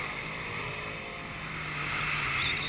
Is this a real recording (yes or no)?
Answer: yes